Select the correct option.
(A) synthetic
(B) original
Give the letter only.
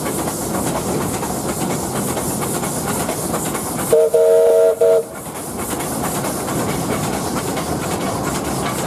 B